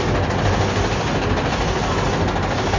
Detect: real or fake real